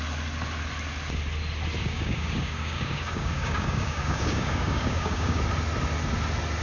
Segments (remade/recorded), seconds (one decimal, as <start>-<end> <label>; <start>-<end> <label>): 0.0-1.8 recorded; 1.8-5.4 remade; 5.4-6.6 recorded